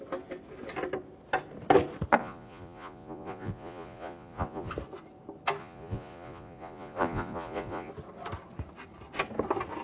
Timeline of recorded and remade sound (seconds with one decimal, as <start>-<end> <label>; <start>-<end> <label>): 0.0-2.2 recorded; 2.2-4.7 remade; 4.7-5.6 recorded; 5.6-7.9 remade; 7.9-9.8 recorded